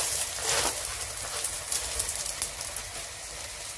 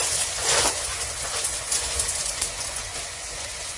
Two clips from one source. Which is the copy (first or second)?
second